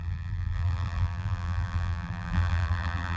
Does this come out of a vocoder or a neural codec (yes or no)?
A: yes